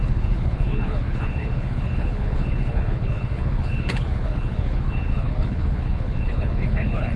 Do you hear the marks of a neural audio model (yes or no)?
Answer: yes